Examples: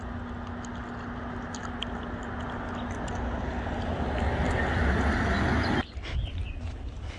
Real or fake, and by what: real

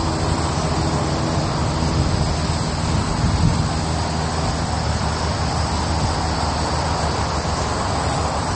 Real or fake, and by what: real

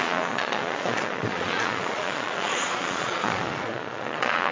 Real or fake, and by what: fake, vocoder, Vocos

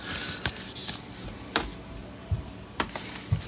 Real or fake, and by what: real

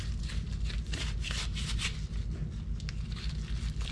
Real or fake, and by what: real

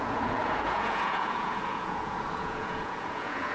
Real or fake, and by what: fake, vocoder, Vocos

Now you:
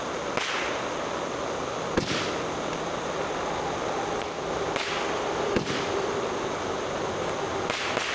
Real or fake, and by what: real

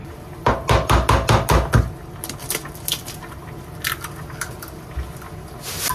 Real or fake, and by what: real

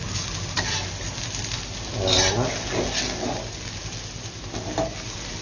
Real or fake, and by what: real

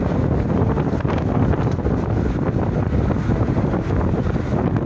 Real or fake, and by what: real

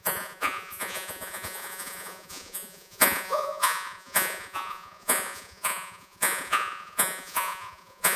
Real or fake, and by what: fake, vocoder, Vocos